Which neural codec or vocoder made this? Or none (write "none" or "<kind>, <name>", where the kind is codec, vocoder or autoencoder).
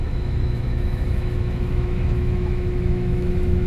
autoencoder, DAC-VAE